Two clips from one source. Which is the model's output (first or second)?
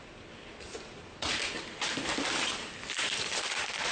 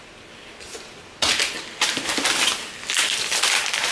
first